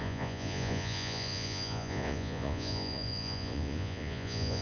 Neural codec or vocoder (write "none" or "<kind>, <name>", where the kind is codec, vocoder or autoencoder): vocoder, Vocos